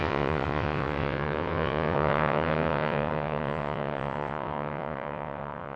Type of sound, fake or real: fake